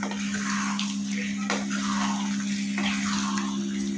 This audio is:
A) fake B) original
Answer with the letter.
B